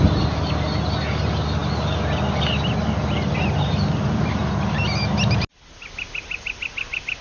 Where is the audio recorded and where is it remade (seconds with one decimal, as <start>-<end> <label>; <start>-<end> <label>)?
0.0-7.2 recorded